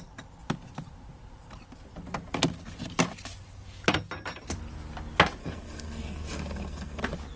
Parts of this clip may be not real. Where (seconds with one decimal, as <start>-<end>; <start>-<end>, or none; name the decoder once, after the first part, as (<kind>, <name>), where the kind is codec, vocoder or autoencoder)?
5.4-7.0 (codec, SNAC)